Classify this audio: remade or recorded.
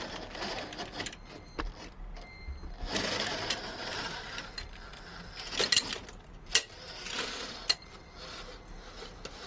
recorded